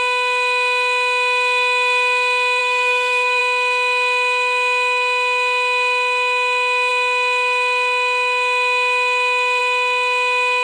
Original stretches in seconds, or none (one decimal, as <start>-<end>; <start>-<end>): 0.0-2.6; 3.4-10.6